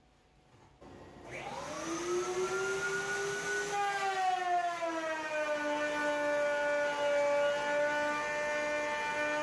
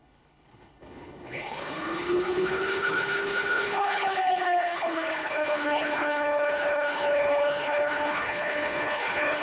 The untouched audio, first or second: first